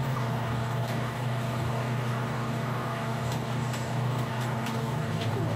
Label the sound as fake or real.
fake